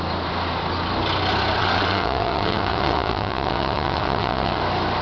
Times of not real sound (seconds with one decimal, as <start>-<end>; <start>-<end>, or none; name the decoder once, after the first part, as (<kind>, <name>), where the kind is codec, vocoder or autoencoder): 1.6-4.6 (vocoder, WaveNeXt)